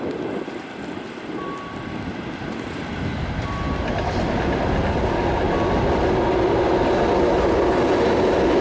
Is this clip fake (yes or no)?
no